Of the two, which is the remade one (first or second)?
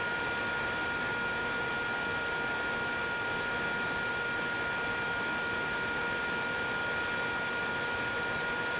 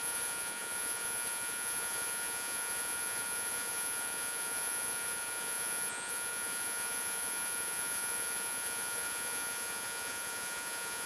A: second